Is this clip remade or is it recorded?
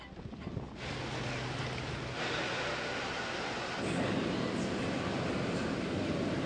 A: recorded